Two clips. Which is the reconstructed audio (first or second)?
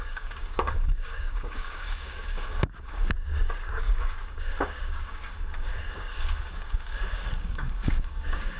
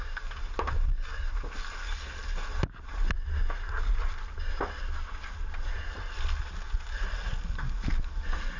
first